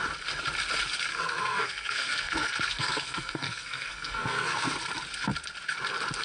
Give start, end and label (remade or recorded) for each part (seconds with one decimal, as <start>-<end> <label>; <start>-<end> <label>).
0.0-1.1 recorded; 1.1-4.7 remade; 4.7-6.2 recorded